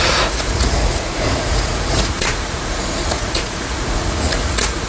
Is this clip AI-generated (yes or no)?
yes